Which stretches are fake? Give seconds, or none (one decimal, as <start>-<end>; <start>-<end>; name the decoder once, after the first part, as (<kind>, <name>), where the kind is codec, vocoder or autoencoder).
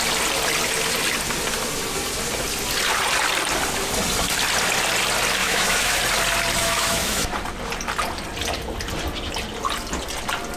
5.4-6.0 (autoencoder, DAC-VAE); 6.6-7.3